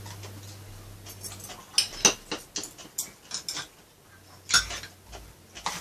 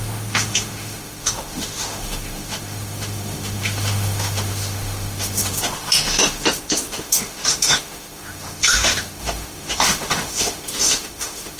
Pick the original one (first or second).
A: first